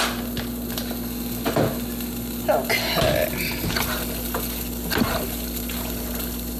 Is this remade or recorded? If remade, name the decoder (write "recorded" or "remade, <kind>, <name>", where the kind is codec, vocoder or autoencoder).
recorded